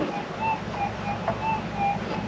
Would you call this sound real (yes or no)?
yes